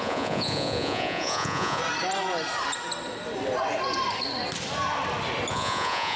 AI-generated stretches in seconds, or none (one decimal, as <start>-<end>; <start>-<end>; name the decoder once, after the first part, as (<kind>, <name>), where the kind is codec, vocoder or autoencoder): 0.0-1.8 (vocoder, Vocos); 5.5-6.2